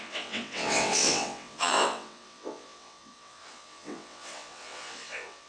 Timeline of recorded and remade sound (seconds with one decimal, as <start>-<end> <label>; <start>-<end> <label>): 0.0-5.5 remade